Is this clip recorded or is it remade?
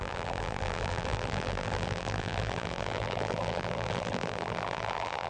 remade